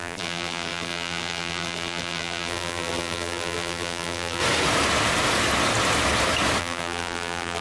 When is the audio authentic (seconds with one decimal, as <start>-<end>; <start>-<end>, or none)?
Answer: 4.4-6.6